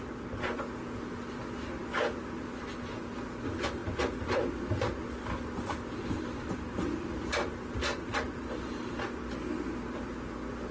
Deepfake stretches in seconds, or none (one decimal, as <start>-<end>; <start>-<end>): none